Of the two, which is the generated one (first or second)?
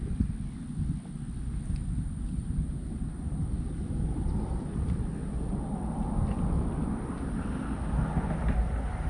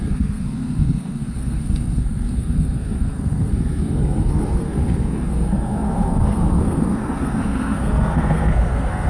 second